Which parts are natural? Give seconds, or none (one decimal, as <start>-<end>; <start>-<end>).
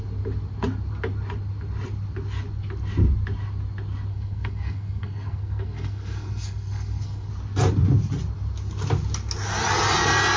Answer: 0.0-4.1; 7.3-10.4